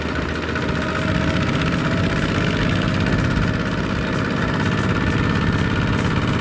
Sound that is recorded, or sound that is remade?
recorded